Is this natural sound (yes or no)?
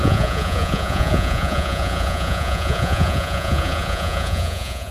no